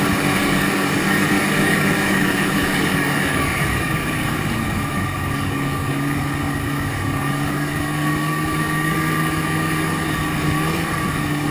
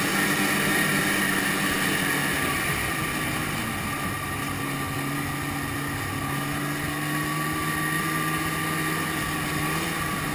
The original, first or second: second